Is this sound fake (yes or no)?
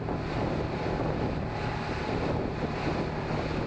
no